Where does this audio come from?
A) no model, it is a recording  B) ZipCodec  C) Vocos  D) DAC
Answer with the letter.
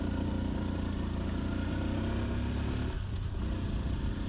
A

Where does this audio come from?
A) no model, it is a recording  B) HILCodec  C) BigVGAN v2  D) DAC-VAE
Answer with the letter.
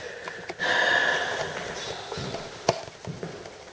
A